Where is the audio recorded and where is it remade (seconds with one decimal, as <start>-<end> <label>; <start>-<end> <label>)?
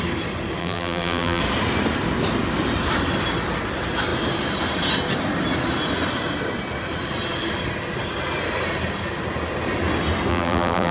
0.0-0.6 recorded; 0.6-1.4 remade; 1.4-10.3 recorded; 10.3-10.9 remade